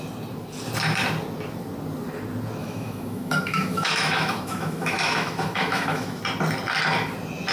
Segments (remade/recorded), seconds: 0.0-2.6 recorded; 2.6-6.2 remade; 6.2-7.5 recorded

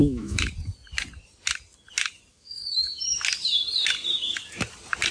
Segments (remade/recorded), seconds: 0.0-0.5 remade; 0.5-2.3 recorded; 2.3-3.0 remade; 3.0-5.1 recorded

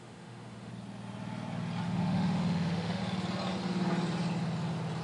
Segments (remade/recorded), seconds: 0.0-0.7 remade; 0.7-1.8 recorded; 1.8-3.0 remade; 3.0-5.0 recorded

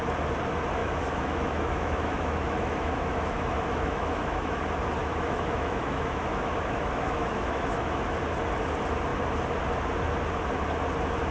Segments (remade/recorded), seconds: 0.0-0.8 recorded; 0.8-4.6 remade; 4.6-5.0 recorded; 5.0-8.2 remade; 8.2-11.3 recorded

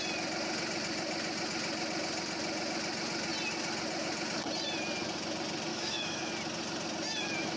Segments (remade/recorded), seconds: 0.0-5.7 recorded; 5.7-6.3 remade; 6.3-7.6 recorded

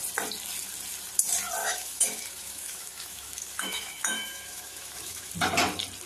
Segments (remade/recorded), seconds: 0.0-1.6 recorded; 1.6-5.3 remade; 5.3-6.1 recorded